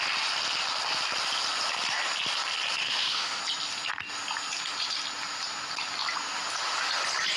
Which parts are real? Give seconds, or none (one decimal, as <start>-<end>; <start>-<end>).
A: 0.0-2.8; 3.4-7.4